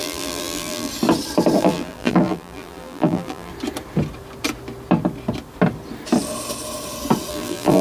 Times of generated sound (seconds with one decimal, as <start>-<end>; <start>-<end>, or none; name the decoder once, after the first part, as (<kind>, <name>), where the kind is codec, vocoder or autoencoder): 0.0-0.9 (vocoder, BigVGAN v2); 1.6-3.5; 7.3-7.8

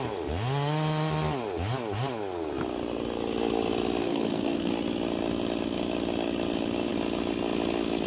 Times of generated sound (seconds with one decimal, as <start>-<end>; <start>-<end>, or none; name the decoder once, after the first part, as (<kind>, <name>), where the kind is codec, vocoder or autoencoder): 4.0-4.7 (codec, SNAC)

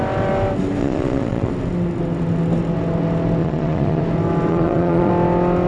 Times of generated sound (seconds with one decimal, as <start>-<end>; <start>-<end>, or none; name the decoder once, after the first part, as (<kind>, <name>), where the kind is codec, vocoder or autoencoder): 0.8-1.5 (vocoder, Vocos); 3.4-4.0; 4.5-5.1

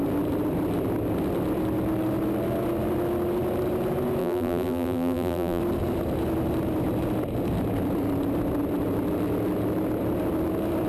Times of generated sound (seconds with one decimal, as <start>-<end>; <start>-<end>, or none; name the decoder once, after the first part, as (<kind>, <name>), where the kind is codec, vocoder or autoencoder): 4.2-5.6 (vocoder, BigVGAN v2)

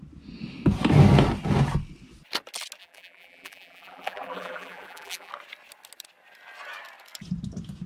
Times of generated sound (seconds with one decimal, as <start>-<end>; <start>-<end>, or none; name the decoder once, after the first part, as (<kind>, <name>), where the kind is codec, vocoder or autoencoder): 2.8-5.3 (vocoder, BigVGAN v2)

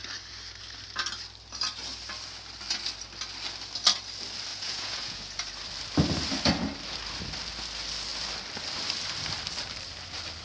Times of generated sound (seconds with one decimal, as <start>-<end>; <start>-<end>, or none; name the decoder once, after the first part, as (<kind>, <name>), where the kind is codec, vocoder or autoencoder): 4.5-5.2 (vocoder, Vocos)

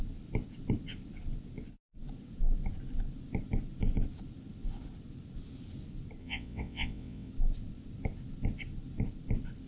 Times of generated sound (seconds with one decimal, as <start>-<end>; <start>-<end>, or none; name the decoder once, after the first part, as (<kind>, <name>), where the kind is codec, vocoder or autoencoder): 6.2-7.3 (vocoder, WaveNeXt)

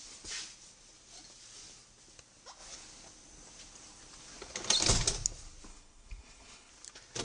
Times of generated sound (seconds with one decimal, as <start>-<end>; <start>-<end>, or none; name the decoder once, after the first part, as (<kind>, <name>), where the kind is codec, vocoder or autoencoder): 5.7-6.7 (codec, HILCodec)